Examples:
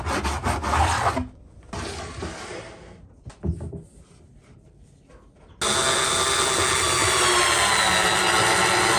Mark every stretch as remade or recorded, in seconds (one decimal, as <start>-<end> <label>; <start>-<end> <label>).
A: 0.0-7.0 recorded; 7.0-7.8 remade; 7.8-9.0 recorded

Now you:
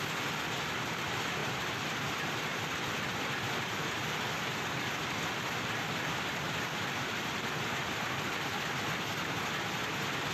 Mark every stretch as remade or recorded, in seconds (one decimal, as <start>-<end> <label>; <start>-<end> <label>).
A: 0.0-1.4 recorded; 1.4-2.4 remade; 2.4-10.3 recorded

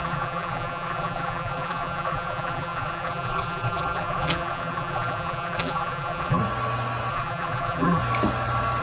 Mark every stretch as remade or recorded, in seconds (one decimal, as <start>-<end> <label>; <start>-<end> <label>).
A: 0.0-6.4 remade; 6.4-7.1 recorded; 7.1-8.0 remade; 8.0-8.8 recorded

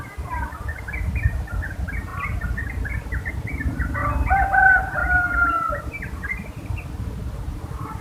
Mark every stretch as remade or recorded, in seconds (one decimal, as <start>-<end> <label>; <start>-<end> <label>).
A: 0.0-4.0 remade; 4.0-4.6 recorded; 4.6-8.0 remade

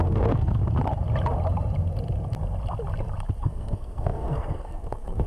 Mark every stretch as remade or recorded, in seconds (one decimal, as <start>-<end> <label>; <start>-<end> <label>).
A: 0.0-0.6 remade; 0.6-3.4 recorded; 3.4-5.3 remade